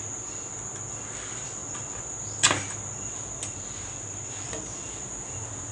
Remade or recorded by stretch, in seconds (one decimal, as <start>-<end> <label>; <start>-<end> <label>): 0.0-5.7 recorded